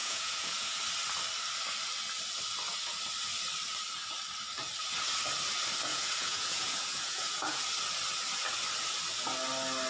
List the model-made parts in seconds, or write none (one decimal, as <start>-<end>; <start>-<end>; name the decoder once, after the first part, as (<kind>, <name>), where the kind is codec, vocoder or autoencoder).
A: 0.0-0.8 (vocoder, Vocos); 5.9-7.6